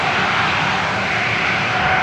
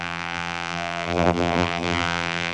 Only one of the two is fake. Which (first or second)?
second